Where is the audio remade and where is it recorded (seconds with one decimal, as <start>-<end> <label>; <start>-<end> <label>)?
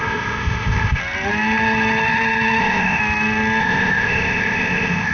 0.0-1.0 remade; 1.0-2.6 recorded; 2.6-3.0 remade; 3.0-3.6 recorded; 3.6-5.1 remade